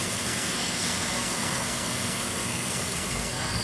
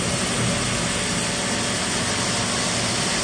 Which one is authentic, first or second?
second